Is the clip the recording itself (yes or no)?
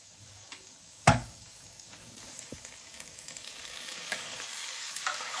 no